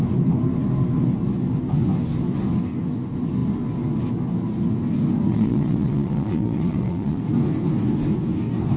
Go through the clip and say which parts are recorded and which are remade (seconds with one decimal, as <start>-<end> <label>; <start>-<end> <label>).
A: 0.0-5.3 recorded; 5.3-7.2 remade; 7.2-8.8 recorded